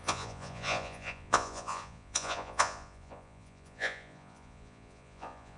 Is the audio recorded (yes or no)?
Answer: no